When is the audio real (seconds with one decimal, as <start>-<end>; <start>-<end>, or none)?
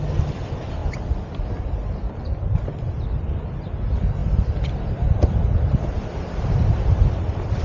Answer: 0.0-7.6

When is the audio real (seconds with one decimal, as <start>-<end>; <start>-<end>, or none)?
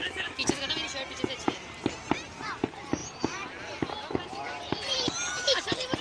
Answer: 0.7-6.0